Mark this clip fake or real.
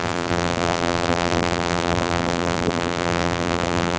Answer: fake